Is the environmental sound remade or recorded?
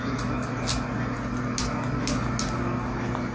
recorded